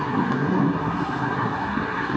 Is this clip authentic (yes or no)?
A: no